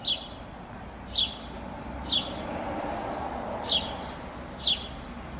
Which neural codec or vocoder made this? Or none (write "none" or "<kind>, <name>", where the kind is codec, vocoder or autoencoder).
none